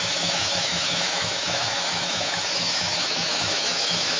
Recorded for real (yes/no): no